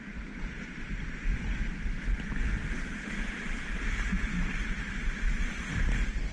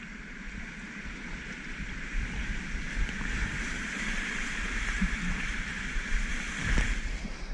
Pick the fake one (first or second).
second